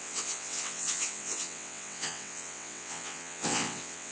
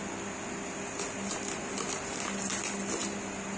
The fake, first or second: first